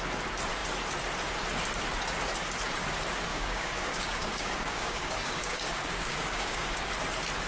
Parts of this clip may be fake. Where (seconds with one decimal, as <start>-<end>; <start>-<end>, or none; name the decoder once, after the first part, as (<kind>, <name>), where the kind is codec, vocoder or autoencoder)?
3.3-6.9 (codec, DAC)